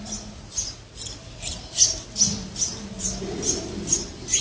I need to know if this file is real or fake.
real